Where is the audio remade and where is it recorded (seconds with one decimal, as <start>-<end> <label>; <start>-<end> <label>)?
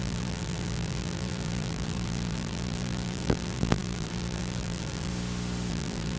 0.0-5.1 remade; 5.1-5.7 recorded; 5.7-6.2 remade